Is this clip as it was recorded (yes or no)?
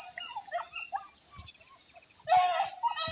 yes